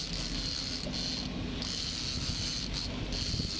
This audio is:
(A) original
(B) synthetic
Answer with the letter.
A